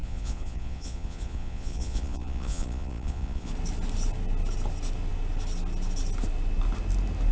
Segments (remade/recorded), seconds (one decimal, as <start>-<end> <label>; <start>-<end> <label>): 0.0-3.5 remade; 3.5-7.3 recorded